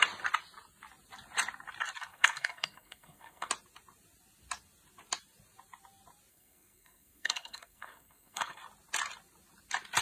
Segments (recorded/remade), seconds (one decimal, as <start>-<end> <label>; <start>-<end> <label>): 0.0-2.1 recorded; 2.1-3.5 remade; 3.5-6.3 recorded; 6.3-8.6 remade; 8.6-10.0 recorded